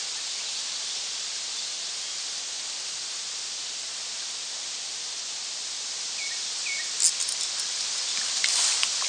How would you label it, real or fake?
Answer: real